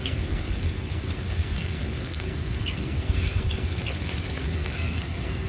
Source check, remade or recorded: remade